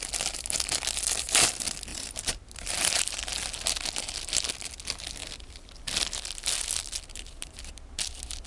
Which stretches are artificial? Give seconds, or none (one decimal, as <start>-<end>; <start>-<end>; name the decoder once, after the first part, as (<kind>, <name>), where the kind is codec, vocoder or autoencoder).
1.9-3.2 (vocoder, BigVGAN v2)